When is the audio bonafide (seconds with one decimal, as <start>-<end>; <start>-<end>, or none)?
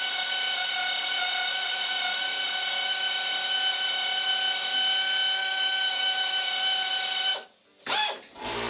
0.0-5.4; 6.5-8.7